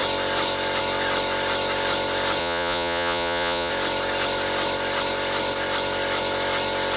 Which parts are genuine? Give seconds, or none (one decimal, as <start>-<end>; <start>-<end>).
0.0-2.4; 3.7-7.0